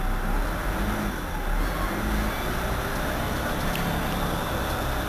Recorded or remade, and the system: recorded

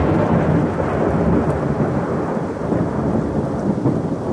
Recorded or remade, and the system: recorded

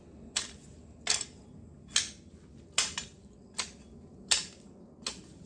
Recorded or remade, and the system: recorded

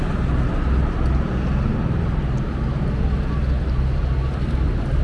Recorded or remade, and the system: recorded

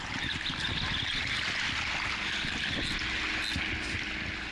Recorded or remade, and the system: recorded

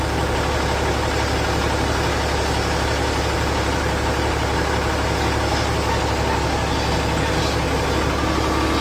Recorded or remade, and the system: recorded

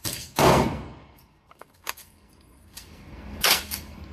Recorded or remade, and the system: remade, codec, SNAC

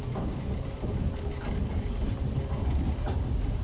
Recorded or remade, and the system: recorded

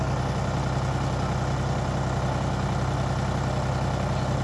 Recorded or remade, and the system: recorded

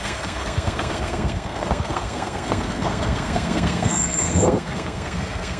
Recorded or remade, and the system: remade, codec, SNAC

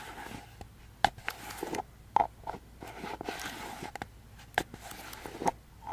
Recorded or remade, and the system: recorded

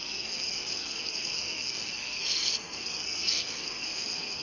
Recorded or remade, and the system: remade, codec, SNAC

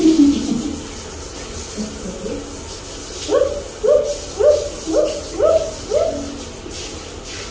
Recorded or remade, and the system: recorded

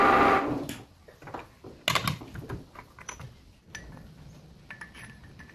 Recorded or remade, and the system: recorded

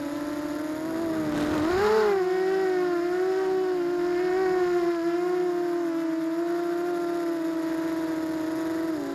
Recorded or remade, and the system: recorded